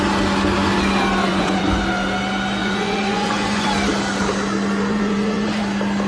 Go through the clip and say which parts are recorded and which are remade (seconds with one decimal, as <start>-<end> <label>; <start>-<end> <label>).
0.0-1.3 recorded; 1.3-1.8 remade; 1.8-2.6 recorded; 2.6-3.7 remade; 3.7-4.9 recorded; 4.9-5.6 remade; 5.6-6.1 recorded